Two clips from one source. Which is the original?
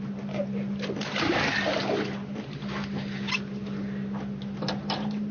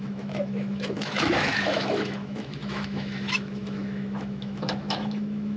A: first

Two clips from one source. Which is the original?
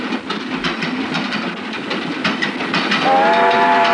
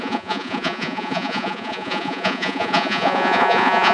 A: first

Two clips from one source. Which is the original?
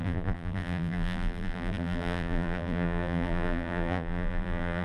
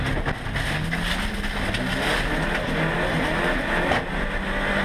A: second